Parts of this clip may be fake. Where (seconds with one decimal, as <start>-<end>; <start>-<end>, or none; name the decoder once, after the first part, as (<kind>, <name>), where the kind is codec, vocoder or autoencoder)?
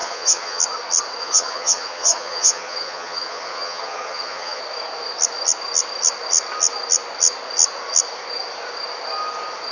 0.0-0.6 (vocoder, HiFi-GAN); 1.2-4.6